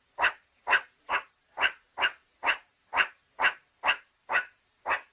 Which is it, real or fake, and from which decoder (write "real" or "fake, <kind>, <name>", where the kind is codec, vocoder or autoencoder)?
fake, vocoder, BigVGAN v2